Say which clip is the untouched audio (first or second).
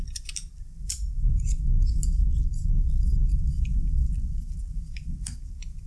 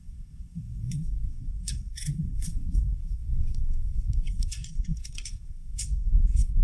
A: first